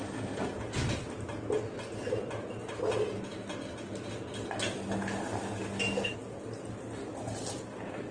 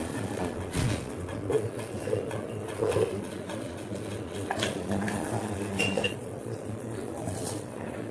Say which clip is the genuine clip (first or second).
first